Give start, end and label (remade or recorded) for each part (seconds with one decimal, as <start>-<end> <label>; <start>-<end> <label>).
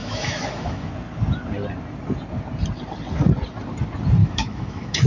0.0-0.9 remade; 0.9-4.2 recorded; 4.2-5.1 remade